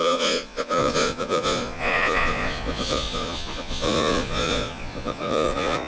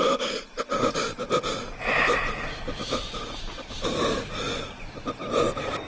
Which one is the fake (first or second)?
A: first